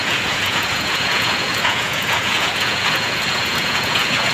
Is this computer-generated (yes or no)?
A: yes